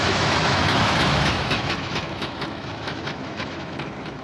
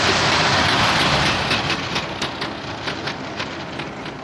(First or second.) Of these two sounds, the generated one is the first